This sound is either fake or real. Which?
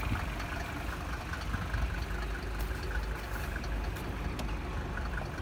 real